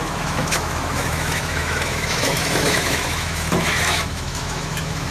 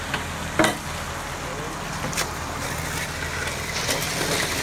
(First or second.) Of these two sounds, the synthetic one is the first